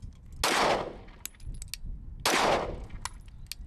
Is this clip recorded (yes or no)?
yes